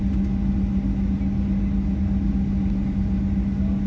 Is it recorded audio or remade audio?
recorded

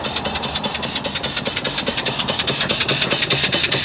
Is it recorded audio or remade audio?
remade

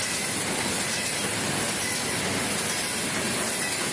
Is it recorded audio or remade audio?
remade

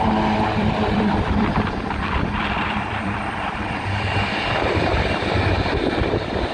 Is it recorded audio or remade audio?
remade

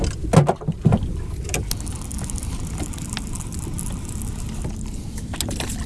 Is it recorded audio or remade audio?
recorded